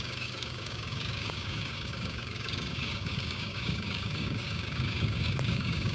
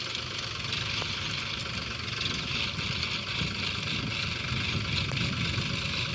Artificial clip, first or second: first